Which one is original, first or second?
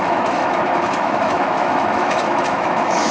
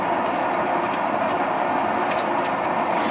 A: second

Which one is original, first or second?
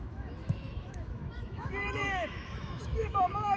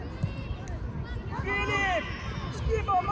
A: second